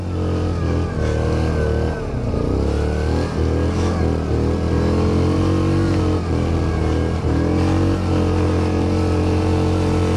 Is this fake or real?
real